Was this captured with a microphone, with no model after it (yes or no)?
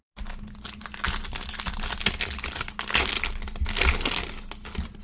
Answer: yes